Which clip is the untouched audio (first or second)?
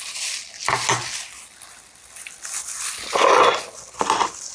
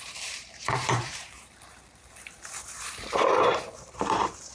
first